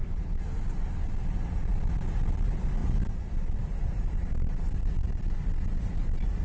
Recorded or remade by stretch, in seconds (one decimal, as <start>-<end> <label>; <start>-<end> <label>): 0.0-6.4 recorded

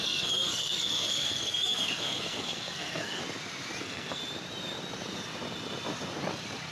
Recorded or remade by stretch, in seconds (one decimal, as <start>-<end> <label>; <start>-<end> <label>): 0.0-3.2 remade; 3.2-3.8 recorded; 3.8-4.2 remade; 4.2-6.7 recorded

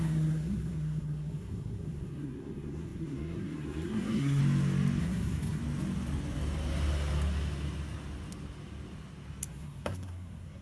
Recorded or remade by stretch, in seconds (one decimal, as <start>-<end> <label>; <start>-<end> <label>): 0.0-4.4 remade; 4.4-5.0 recorded; 5.0-5.6 remade; 5.6-9.5 recorded; 9.5-10.6 remade